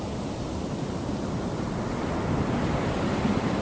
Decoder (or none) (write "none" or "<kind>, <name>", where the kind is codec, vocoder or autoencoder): none